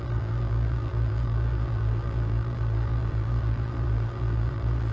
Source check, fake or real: fake